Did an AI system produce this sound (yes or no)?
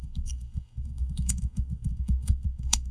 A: yes